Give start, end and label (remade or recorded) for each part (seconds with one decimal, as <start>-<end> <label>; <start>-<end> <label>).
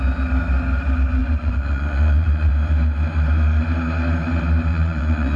0.0-1.2 recorded; 1.2-2.5 remade; 2.5-4.7 recorded; 4.7-5.4 remade